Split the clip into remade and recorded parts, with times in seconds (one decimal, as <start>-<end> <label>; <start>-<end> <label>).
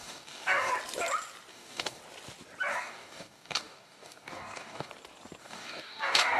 0.0-0.7 remade; 0.7-1.5 recorded; 1.5-2.0 remade; 2.0-2.7 recorded; 2.7-4.9 remade; 4.9-5.4 recorded; 5.4-6.4 remade